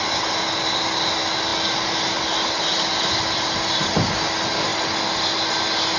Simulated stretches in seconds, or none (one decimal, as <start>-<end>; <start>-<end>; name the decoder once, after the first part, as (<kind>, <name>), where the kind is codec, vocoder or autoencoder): none